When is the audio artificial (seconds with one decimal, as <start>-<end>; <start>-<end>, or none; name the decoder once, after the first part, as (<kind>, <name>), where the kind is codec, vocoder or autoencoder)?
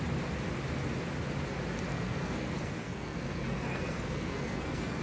1.9-5.0 (codec, SNAC)